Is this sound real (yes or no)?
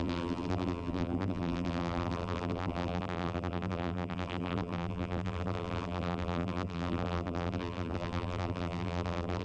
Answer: no